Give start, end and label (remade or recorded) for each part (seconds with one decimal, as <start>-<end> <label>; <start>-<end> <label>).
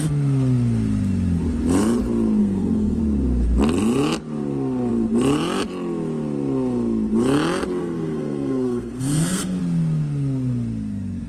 0.0-2.4 recorded; 2.4-3.0 remade; 3.0-7.8 recorded; 7.8-9.6 remade; 9.6-11.3 recorded